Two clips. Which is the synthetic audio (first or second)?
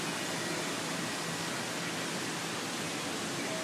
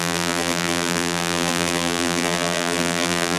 second